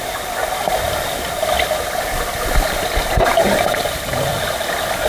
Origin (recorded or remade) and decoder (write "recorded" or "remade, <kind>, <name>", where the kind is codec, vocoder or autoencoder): remade, vocoder, BigVGAN v2